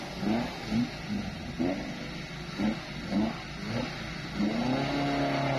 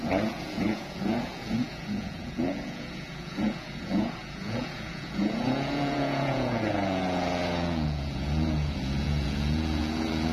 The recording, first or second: first